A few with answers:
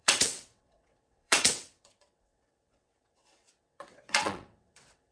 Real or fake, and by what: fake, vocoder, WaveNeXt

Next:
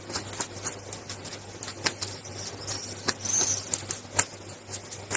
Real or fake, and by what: real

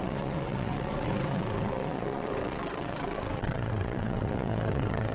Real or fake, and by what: fake, vocoder, WaveNeXt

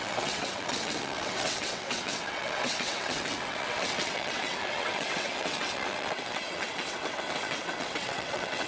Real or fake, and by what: fake, vocoder, WaveNeXt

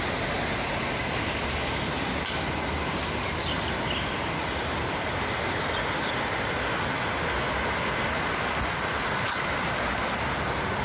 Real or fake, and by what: real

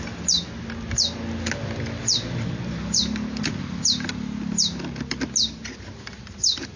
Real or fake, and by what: real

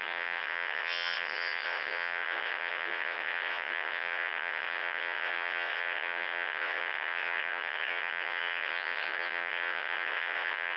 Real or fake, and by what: fake, vocoder, WaveNeXt